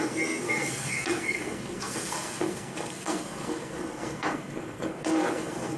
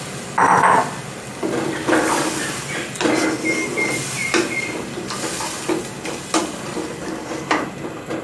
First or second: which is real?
second